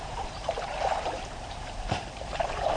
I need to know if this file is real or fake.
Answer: fake